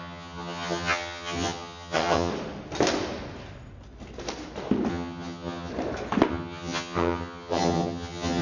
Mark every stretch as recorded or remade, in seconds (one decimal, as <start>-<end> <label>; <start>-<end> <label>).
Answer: 0.0-2.3 remade; 2.3-4.9 recorded; 4.9-5.7 remade; 5.7-6.3 recorded; 6.3-8.4 remade